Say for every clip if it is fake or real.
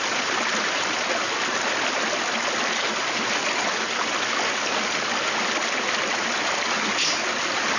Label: real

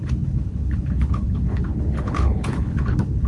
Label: fake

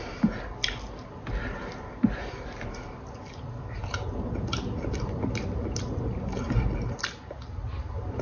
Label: real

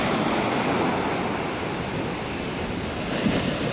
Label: real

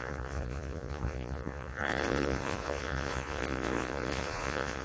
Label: fake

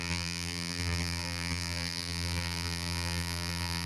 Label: fake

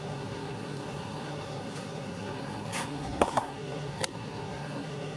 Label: fake